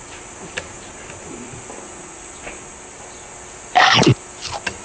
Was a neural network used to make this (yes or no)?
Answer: no